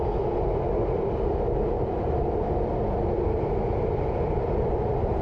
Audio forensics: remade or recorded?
recorded